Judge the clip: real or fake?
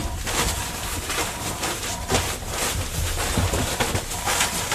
real